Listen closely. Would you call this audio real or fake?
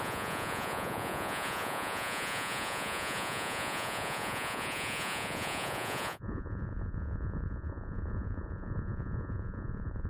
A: fake